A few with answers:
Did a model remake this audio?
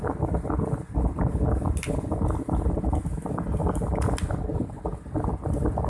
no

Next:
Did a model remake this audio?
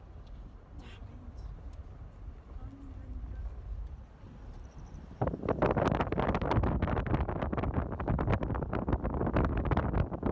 no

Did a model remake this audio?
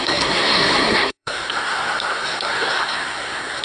yes